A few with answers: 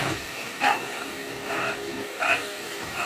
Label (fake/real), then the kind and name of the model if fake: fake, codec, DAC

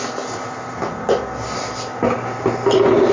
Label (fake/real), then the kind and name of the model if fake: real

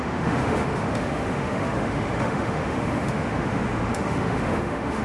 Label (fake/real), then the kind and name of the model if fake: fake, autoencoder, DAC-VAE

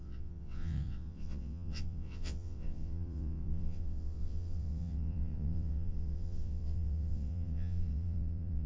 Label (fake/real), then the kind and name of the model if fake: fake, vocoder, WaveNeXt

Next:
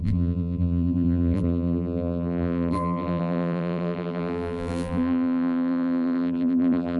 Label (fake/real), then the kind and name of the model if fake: fake, vocoder, BigVGAN v2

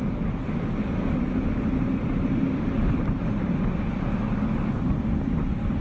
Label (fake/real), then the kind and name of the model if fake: real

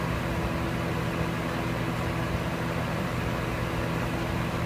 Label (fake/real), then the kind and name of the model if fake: real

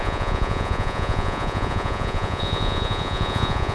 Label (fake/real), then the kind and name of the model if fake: fake, vocoder, Vocos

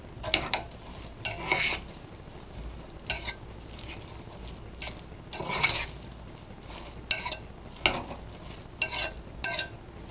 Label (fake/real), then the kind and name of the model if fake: real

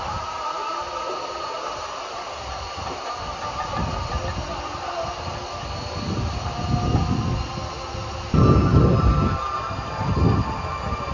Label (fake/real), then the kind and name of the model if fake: real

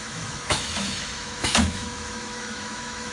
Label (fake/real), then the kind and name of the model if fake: fake, autoencoder, DAC-VAE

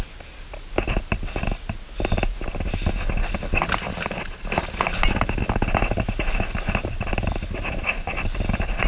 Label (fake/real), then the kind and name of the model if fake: real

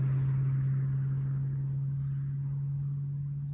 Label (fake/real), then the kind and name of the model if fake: real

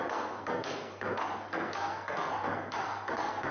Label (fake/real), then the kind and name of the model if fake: fake, codec, SNAC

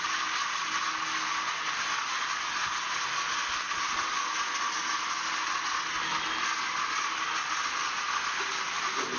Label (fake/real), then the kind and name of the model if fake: real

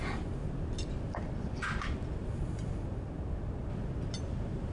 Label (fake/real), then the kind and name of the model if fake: real